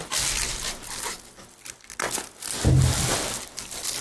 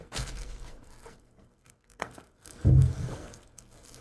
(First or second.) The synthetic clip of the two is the second